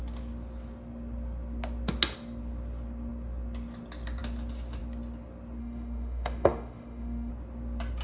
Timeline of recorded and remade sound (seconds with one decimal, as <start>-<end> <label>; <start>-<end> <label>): 0.0-5.6 recorded; 5.6-7.3 remade; 7.3-8.0 recorded